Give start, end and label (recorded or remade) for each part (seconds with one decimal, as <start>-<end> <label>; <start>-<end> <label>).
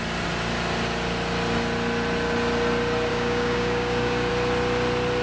0.0-3.1 recorded; 3.1-4.3 remade; 4.3-5.2 recorded